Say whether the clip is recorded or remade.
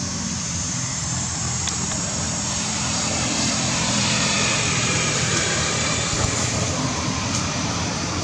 remade